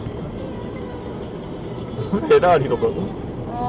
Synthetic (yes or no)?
no